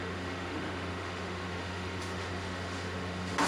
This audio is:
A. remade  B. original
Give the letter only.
A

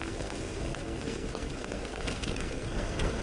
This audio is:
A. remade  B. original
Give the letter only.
A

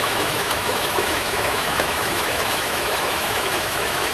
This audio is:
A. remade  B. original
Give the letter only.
A